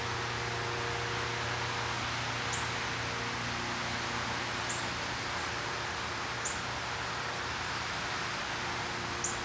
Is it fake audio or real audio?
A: real